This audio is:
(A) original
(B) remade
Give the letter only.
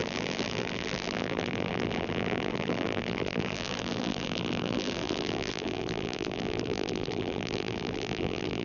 B